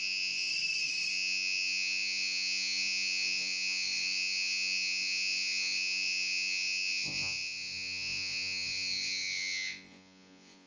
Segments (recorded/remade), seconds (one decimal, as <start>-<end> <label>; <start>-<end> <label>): 0.0-0.5 remade; 0.5-1.1 recorded; 1.1-10.7 remade